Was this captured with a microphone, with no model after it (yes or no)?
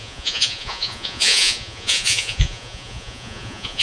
no